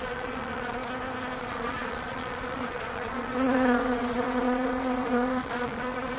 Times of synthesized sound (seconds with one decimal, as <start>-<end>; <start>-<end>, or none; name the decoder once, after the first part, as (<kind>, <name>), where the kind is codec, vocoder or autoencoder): 0.0-0.8 (vocoder, Vocos); 1.4-6.2